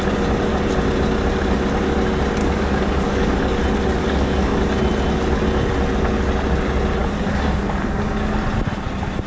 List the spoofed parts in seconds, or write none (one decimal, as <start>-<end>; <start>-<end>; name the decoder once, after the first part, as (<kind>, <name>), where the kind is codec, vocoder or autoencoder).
2.4-3.6 (codec, DAC); 4.0-4.6; 7.0-8.4